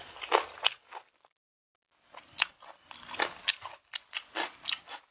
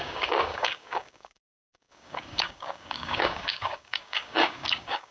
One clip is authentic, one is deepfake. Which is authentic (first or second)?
first